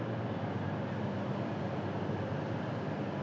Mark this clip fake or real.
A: real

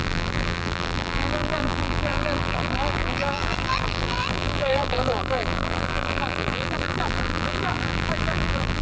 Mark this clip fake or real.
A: fake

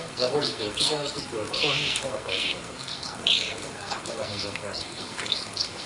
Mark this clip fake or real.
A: fake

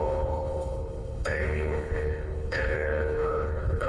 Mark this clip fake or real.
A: fake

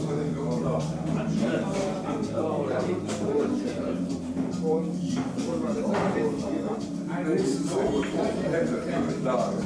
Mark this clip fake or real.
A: fake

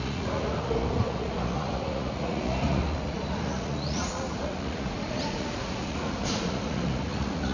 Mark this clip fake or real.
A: fake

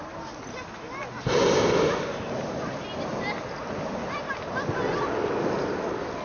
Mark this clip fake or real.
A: real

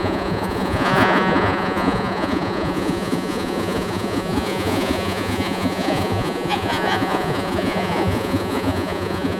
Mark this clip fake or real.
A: fake